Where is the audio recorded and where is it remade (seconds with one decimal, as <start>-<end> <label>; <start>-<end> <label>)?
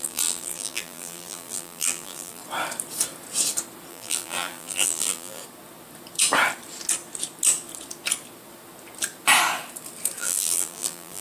0.0-2.4 remade; 2.4-3.9 recorded; 3.9-5.4 remade; 5.4-10.2 recorded; 10.2-11.2 remade